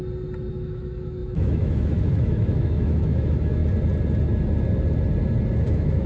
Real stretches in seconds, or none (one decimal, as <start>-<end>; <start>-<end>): 0.0-0.5; 3.6-5.6